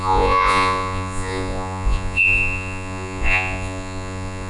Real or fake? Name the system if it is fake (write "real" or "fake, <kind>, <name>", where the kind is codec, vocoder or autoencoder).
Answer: fake, vocoder, Vocos